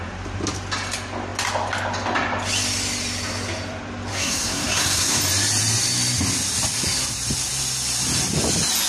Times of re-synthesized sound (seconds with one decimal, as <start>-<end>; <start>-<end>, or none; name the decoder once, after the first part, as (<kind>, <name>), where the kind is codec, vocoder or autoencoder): 4.1-5.2 (codec, SNAC)